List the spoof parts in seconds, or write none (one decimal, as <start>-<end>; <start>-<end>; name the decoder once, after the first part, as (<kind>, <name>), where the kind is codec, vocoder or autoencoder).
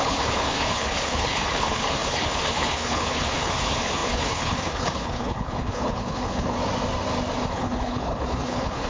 0.0-6.6 (codec, HILCodec); 7.5-8.9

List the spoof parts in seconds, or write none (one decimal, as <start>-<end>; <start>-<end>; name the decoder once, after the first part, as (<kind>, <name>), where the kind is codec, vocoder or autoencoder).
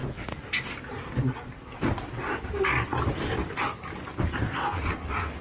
none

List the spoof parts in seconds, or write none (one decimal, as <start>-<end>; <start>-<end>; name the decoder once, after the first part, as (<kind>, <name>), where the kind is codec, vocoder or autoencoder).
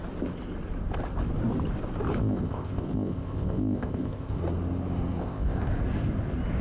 2.2-4.4 (codec, ZipCodec); 5.2-5.7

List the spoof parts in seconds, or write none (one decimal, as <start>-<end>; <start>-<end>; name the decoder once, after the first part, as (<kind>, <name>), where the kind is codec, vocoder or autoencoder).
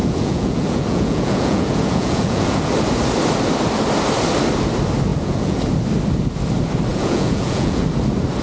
0.0-2.6 (vocoder, Vocos); 5.1-5.6; 6.9-7.8